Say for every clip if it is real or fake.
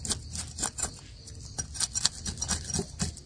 real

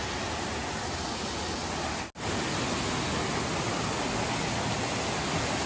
real